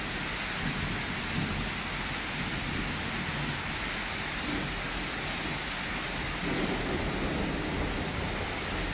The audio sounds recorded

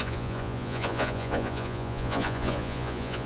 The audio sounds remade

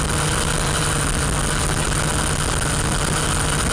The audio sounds recorded